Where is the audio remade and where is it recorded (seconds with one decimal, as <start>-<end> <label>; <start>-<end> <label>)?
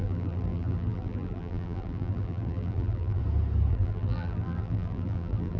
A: 0.0-3.2 remade; 3.2-3.7 recorded; 3.7-5.6 remade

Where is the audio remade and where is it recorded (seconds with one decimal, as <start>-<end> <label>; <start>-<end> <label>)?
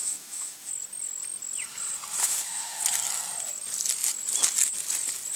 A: 0.0-0.7 remade; 0.7-2.2 recorded; 2.2-2.8 remade; 2.8-5.4 recorded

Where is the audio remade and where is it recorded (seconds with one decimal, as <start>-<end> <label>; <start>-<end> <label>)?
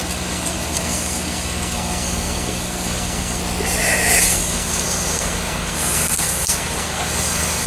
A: 0.0-3.4 remade; 3.4-4.2 recorded; 4.2-7.7 remade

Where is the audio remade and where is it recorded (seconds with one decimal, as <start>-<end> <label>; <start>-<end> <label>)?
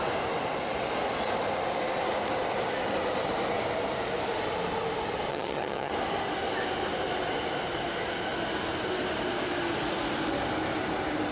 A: 0.0-5.3 recorded; 5.3-5.9 remade; 5.9-11.3 recorded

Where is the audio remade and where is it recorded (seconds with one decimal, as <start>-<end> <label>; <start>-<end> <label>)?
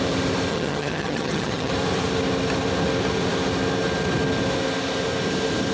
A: 0.0-0.5 recorded; 0.5-1.7 remade; 1.7-5.7 recorded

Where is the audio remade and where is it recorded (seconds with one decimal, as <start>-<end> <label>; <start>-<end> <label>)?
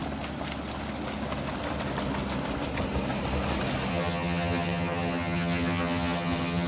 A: 0.0-3.9 recorded; 3.9-6.7 remade